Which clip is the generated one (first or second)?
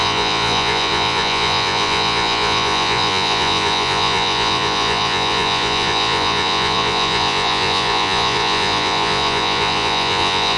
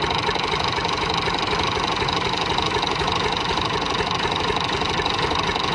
first